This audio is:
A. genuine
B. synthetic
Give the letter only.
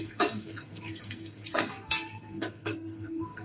B